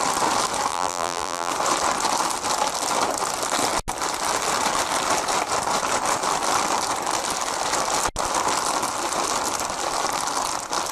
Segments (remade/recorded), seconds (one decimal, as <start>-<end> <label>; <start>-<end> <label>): 0.0-0.7 recorded; 0.7-1.5 remade; 1.5-10.9 recorded